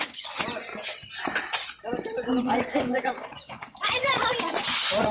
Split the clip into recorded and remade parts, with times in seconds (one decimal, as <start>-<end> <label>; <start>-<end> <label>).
0.0-0.7 remade; 0.7-2.4 recorded; 2.4-5.1 remade

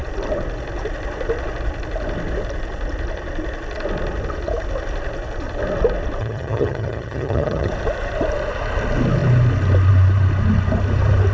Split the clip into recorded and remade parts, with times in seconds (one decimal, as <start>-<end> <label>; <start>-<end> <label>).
0.0-6.2 recorded; 6.2-7.7 remade; 7.7-11.3 recorded

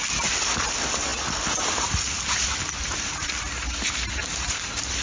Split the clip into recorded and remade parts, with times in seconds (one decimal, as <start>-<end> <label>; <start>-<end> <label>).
0.0-5.0 recorded

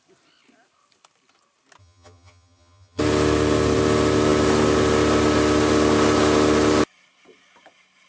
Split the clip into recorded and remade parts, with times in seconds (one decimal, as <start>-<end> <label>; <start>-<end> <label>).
0.0-1.8 recorded; 1.8-3.0 remade; 3.0-8.1 recorded

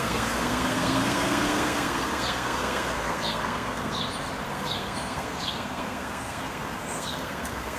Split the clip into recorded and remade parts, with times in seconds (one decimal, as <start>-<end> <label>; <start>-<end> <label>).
0.0-4.0 remade; 4.0-4.5 recorded; 4.5-7.8 remade

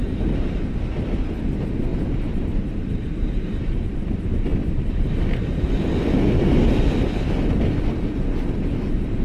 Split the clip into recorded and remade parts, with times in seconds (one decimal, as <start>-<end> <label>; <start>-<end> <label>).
0.0-0.6 remade; 0.6-1.9 recorded; 1.9-3.9 remade; 3.9-9.2 recorded